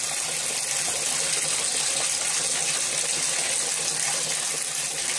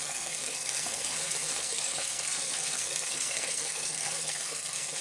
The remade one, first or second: second